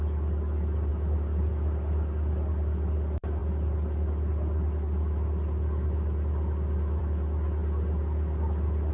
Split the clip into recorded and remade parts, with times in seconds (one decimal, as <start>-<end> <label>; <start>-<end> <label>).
0.0-0.9 remade; 0.9-2.5 recorded; 2.5-3.4 remade; 3.4-7.0 recorded; 7.0-7.6 remade; 7.6-8.9 recorded